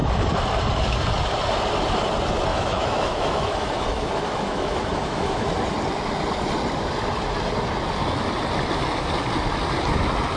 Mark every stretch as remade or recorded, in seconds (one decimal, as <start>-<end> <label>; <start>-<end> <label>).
0.0-2.5 recorded; 2.5-5.5 remade; 5.5-10.4 recorded